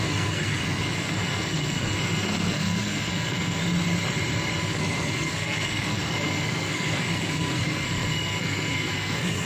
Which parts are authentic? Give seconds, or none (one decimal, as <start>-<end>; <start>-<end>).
3.6-4.7